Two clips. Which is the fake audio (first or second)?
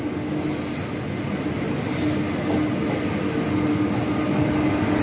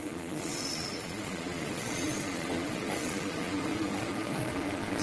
second